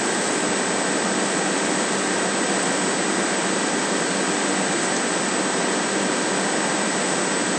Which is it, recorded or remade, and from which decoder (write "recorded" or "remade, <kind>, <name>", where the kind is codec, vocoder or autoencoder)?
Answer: recorded